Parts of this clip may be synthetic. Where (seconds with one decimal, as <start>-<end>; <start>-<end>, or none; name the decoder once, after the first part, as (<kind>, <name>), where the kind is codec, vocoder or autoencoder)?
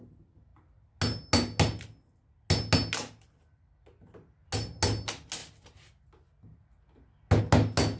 none